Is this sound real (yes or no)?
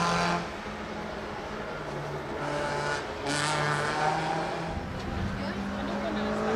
yes